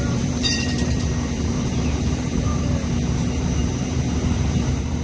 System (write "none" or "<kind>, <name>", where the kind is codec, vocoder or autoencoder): vocoder, BigVGAN v2